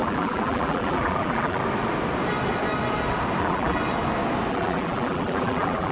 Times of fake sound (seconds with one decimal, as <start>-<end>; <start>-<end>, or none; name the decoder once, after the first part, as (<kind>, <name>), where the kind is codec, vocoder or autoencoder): 0.0-1.6 (vocoder, BigVGAN v2); 3.4-3.8; 4.5-5.9